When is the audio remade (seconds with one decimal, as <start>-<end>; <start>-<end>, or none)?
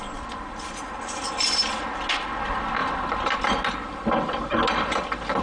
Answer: none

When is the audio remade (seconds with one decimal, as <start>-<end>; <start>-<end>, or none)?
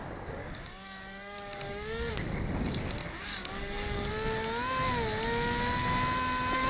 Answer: 0.4-2.1; 3.0-4.1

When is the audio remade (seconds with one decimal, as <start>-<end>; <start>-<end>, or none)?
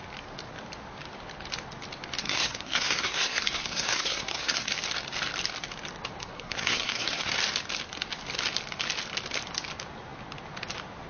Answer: 2.2-4.7; 6.2-7.3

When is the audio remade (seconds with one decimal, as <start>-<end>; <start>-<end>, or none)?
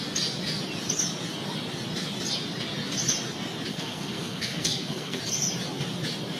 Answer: 3.7-5.2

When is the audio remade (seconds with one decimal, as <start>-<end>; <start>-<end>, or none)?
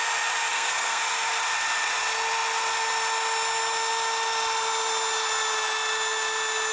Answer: 0.5-1.0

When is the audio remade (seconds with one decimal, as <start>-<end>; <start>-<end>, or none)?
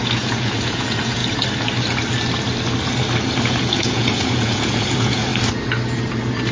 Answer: 0.0-1.2; 3.4-5.3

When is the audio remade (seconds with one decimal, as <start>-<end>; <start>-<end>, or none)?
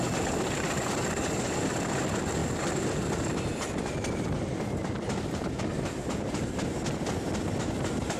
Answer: 5.7-6.4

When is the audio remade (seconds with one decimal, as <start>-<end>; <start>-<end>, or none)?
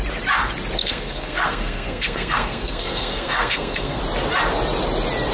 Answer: 0.8-4.0